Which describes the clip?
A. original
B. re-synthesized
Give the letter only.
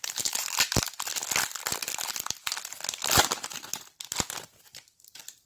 A